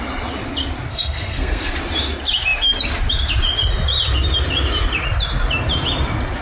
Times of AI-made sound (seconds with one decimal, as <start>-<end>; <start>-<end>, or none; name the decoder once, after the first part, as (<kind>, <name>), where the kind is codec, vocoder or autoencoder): 0.9-1.7 (codec, SNAC)